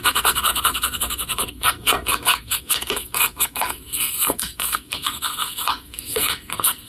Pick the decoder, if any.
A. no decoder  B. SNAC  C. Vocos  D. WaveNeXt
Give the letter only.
B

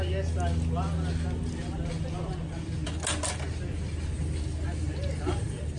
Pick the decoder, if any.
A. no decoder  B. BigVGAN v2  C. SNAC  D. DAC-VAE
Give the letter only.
A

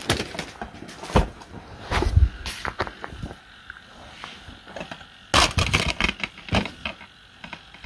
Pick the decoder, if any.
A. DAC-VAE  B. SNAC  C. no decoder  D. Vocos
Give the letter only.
C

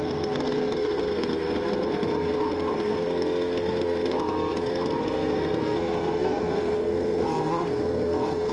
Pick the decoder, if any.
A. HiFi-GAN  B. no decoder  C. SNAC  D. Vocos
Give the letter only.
C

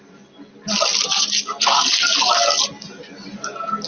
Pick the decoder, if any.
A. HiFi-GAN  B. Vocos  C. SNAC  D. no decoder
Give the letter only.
D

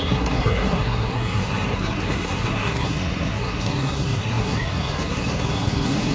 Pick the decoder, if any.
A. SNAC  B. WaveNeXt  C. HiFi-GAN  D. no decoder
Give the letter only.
A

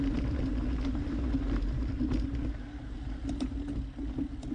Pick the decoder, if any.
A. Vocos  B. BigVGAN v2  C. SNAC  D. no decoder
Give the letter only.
D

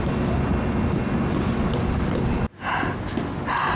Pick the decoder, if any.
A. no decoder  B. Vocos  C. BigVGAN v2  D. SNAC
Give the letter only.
A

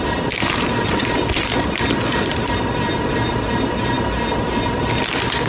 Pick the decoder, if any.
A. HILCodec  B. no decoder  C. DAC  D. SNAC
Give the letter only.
B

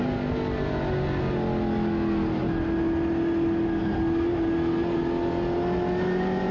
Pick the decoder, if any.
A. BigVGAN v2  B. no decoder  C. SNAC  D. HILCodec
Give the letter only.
B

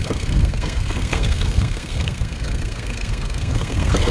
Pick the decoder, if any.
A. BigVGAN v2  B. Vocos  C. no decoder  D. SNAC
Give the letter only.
D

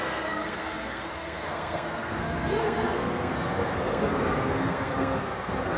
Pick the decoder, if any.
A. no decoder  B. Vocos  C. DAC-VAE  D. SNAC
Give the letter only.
D